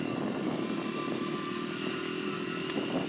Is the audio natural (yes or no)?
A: yes